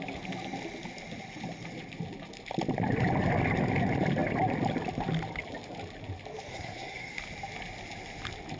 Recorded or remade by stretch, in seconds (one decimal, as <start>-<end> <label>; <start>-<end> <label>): 0.0-6.5 recorded; 6.5-7.2 remade; 7.2-8.6 recorded